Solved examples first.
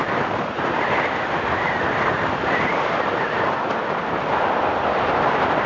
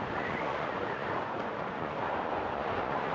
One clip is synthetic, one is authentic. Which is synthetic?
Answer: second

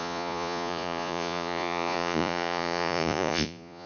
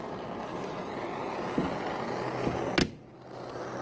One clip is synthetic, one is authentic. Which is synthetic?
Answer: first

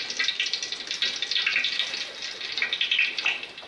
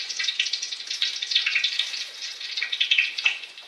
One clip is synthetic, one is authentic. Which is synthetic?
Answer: second